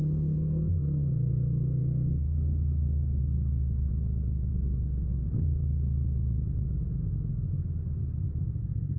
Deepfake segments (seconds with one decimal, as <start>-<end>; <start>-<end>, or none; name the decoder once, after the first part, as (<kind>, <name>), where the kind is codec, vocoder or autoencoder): 0.0-3.9 (codec, SNAC); 4.5-5.6; 8.6-9.0

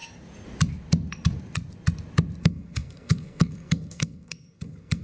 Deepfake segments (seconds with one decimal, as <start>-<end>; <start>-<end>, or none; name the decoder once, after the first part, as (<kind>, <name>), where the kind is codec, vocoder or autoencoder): 2.4-5.0 (codec, SNAC)

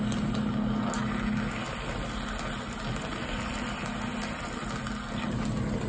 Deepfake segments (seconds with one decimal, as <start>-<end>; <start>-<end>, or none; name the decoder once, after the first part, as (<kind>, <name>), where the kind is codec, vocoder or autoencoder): none

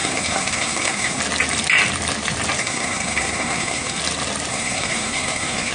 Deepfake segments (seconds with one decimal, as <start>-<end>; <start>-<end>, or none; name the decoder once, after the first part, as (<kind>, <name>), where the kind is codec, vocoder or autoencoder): 0.0-1.2 (codec, SNAC); 2.6-4.0; 4.5-5.7

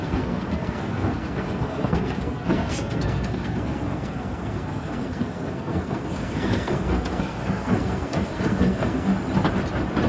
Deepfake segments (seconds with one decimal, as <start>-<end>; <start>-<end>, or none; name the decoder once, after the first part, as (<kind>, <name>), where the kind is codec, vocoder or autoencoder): 0.0-9.1 (codec, SNAC)

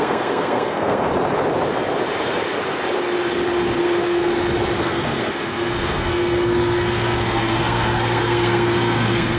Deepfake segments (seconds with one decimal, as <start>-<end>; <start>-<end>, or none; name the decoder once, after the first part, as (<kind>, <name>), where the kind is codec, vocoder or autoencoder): 0.0-1.1 (codec, SNAC); 3.8-4.3; 4.8-9.4